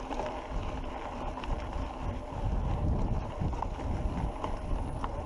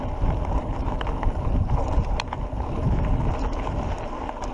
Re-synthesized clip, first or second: second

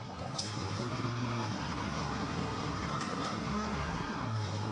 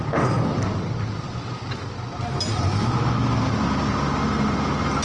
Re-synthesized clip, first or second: first